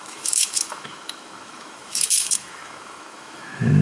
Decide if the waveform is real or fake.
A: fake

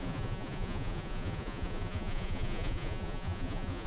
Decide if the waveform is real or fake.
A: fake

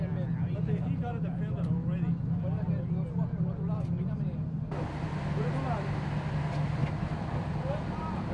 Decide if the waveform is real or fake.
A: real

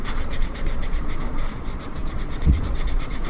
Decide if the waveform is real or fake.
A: fake